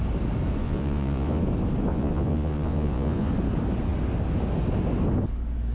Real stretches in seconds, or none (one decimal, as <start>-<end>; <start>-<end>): 0.0-0.6; 1.4-1.9; 3.3-5.7